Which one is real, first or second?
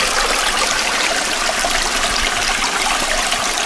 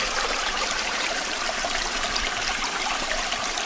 first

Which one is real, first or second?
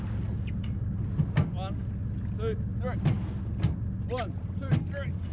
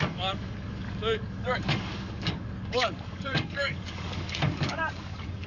first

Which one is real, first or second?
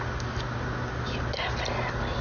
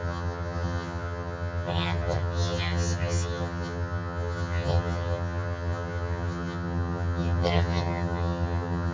first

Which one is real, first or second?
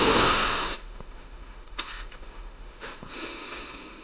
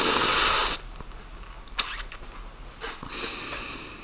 second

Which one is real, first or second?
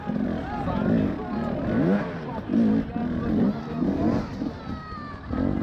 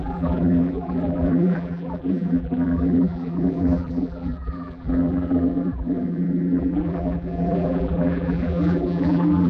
first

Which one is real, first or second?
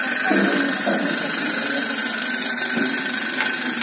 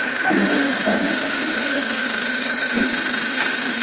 first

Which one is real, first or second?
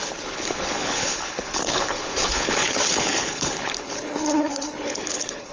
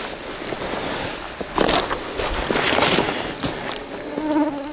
second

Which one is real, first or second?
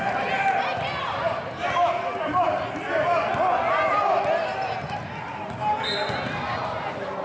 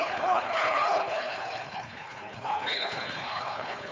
first